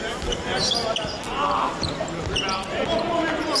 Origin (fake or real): real